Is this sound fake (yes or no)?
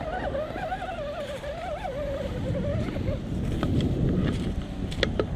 yes